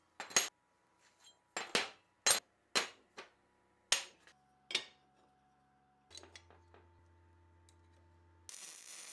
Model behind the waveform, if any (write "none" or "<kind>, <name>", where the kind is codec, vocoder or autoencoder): none